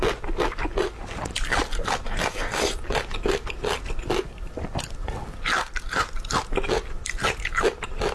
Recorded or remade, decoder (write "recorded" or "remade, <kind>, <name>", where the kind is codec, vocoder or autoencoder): recorded